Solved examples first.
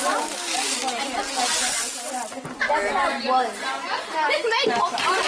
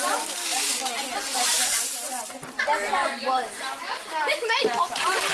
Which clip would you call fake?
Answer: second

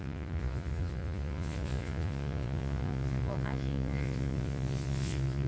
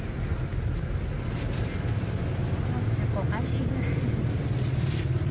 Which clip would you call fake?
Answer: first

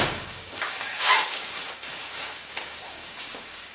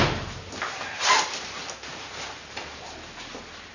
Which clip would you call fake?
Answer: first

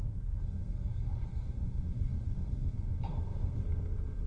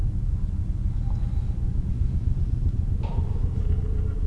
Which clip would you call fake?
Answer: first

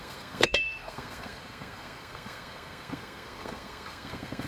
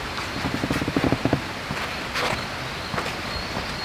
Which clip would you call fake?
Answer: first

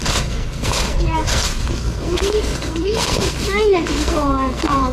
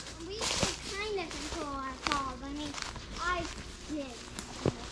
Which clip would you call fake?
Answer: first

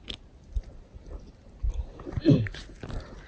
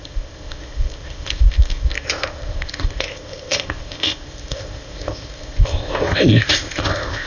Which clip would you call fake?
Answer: second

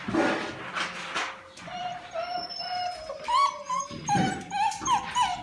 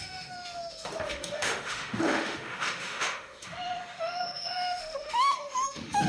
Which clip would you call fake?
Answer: second